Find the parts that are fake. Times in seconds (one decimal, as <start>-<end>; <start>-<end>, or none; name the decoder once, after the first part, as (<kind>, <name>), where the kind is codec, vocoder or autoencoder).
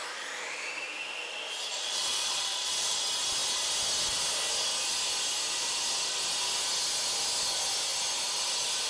1.7-3.0 (vocoder, Vocos)